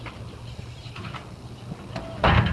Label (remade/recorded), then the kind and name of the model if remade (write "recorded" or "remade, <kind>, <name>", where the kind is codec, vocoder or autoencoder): recorded